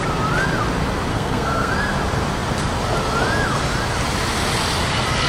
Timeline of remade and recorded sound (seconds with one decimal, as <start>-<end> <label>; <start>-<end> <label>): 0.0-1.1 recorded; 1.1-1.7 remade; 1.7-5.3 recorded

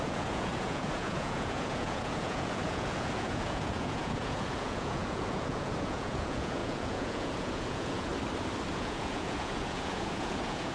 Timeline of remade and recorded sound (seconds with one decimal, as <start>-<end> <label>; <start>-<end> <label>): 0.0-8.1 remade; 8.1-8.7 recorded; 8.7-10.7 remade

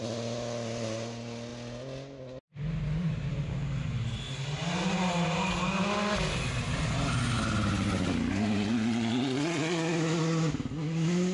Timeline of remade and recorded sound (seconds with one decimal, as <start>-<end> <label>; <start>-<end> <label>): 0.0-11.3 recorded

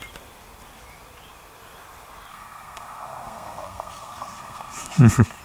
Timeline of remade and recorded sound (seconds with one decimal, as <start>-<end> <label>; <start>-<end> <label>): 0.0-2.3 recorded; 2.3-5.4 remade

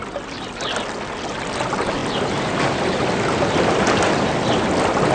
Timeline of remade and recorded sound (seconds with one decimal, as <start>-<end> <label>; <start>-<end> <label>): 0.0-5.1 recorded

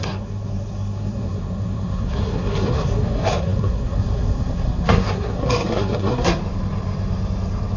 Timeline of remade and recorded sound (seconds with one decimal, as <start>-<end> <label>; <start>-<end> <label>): 0.0-6.4 remade; 6.4-7.8 recorded

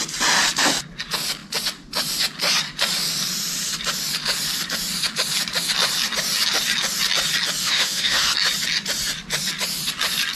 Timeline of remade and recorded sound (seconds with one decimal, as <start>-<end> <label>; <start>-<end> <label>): 0.0-7.6 recorded; 7.6-8.3 remade; 8.3-10.4 recorded